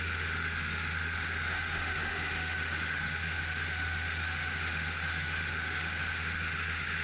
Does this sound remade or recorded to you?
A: remade